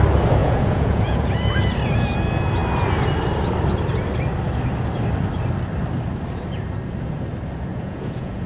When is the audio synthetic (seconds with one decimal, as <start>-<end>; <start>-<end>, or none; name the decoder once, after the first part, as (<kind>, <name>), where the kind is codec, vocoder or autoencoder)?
0.4-1.3 (vocoder, Vocos); 7.7-8.5